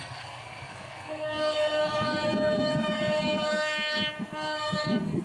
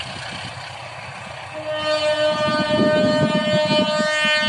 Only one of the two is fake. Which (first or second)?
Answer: first